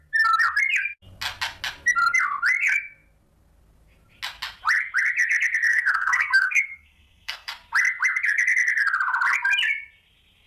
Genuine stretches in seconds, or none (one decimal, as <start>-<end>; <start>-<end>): 0.0-5.7; 7.5-10.5